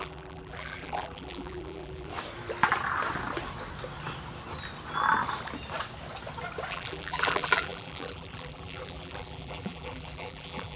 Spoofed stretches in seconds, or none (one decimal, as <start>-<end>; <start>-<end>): 0.0-2.1; 6.7-10.8